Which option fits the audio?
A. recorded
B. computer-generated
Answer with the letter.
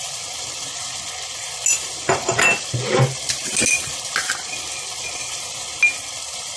A